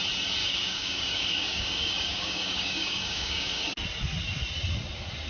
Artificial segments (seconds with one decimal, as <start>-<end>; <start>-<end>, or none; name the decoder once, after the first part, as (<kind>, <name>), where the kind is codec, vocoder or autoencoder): 0.4-3.6 (codec, DAC)